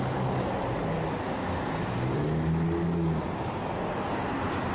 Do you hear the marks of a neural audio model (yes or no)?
no